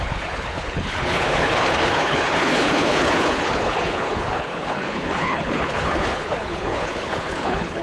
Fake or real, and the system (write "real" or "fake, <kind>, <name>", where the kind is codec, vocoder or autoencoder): fake, codec, HILCodec